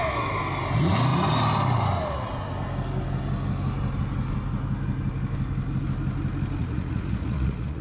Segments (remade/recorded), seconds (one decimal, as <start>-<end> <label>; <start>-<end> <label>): 0.0-6.6 recorded; 6.6-7.8 remade